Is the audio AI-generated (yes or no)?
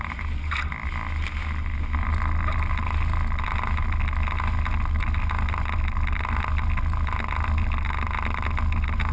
no